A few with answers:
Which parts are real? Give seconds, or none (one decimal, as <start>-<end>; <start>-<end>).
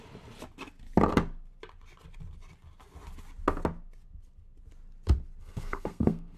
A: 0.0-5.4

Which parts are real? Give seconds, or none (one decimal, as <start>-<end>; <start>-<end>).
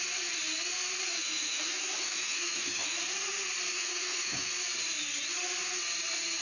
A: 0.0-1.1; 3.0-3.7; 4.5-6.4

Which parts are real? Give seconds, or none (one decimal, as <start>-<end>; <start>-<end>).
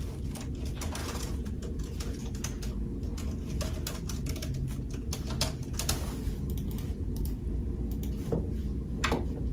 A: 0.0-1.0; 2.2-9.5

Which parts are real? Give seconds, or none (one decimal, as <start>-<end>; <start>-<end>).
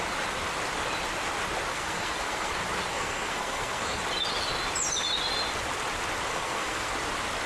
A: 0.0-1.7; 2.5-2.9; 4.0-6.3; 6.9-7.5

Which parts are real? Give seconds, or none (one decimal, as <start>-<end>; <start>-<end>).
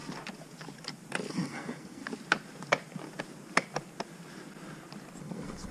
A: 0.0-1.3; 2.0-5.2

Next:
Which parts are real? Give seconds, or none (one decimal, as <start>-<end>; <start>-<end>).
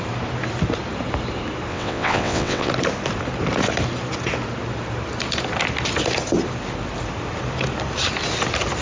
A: 0.0-1.7; 2.7-8.8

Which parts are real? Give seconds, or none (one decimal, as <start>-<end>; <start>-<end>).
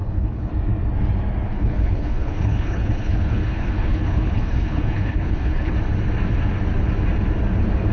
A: 0.5-1.5; 5.7-7.9